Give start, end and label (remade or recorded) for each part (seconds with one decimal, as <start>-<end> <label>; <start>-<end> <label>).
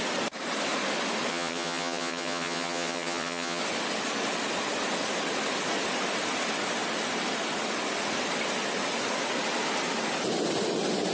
0.0-1.3 recorded; 1.3-3.6 remade; 3.6-11.1 recorded